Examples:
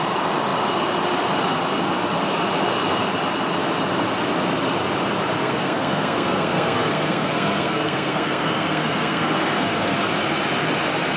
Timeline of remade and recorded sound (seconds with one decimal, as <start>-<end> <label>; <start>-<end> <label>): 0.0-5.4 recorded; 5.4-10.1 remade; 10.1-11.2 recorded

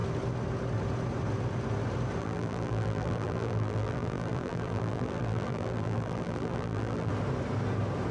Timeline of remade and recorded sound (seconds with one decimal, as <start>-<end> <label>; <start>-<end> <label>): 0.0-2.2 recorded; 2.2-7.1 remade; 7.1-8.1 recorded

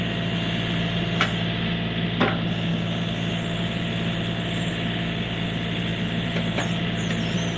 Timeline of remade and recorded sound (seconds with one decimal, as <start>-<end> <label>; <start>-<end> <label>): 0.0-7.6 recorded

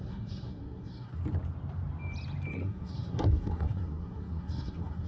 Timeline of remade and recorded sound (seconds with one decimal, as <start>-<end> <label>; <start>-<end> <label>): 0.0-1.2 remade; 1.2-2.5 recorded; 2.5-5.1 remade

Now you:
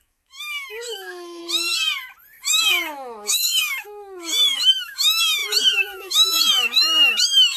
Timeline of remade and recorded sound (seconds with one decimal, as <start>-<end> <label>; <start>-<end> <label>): 0.0-1.4 remade; 1.4-2.4 recorded; 2.4-7.6 remade

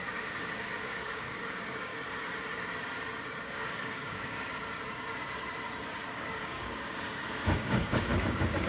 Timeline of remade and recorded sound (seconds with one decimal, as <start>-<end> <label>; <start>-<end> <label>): 0.0-1.9 remade; 1.9-3.4 recorded; 3.4-4.5 remade; 4.5-6.1 recorded; 6.1-8.7 remade